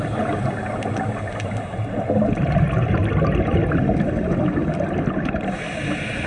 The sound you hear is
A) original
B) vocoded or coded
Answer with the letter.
A